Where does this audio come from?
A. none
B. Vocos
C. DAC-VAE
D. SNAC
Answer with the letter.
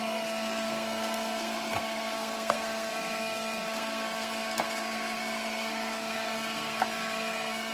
D